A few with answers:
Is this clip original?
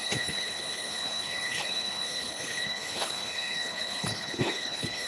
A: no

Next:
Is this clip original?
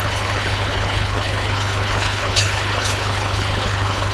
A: no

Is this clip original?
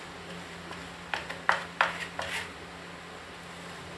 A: yes